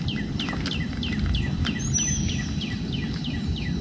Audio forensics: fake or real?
real